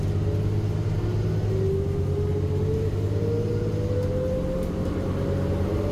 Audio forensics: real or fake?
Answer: real